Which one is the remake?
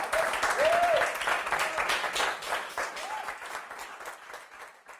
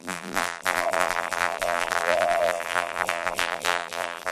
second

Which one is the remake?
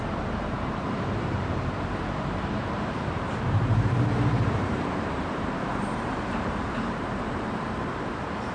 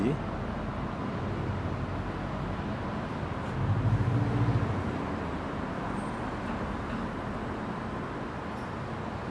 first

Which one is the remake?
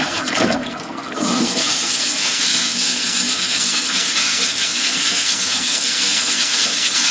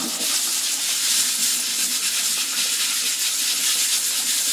first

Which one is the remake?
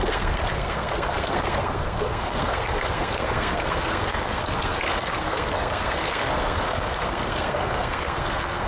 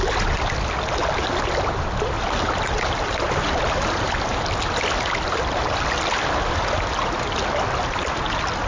first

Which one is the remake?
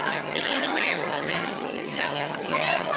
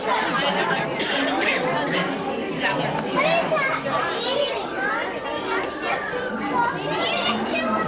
first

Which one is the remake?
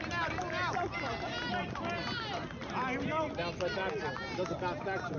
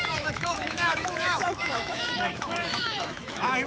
second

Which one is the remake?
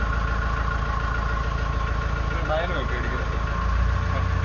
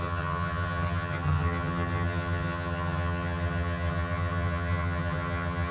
second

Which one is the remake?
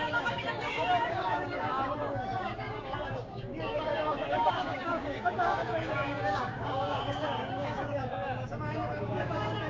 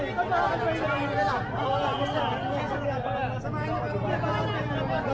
first